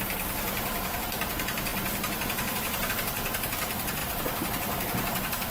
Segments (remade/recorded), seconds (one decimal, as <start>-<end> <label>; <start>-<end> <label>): 0.0-5.5 remade